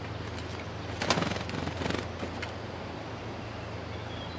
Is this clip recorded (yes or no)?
yes